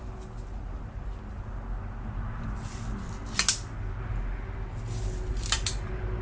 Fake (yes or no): no